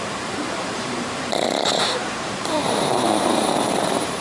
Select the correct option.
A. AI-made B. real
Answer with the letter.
A